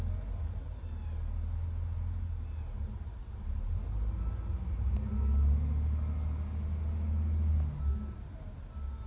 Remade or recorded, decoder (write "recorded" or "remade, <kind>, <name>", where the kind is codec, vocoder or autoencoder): recorded